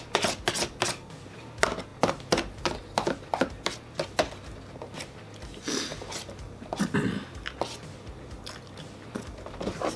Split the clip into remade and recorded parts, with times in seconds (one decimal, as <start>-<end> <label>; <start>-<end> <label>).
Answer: 0.0-10.0 recorded